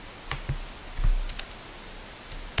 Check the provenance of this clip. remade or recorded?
recorded